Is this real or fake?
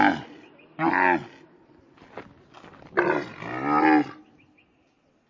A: real